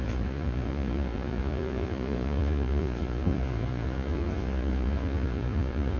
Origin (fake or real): fake